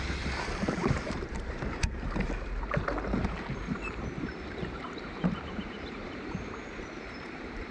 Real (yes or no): no